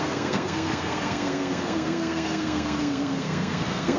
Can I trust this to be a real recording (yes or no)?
no